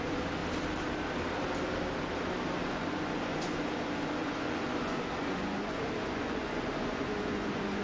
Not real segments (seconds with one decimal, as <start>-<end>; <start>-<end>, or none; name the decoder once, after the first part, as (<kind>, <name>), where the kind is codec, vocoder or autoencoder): 0.0-0.4 (vocoder, Vocos); 2.7-7.8